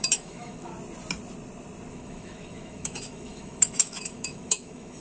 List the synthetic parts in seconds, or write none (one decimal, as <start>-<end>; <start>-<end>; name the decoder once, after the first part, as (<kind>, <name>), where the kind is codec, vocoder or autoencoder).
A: 0.0-0.7 (autoencoder, DAC-VAE); 1.9-5.0